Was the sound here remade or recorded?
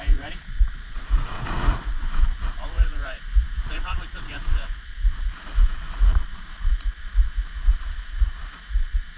remade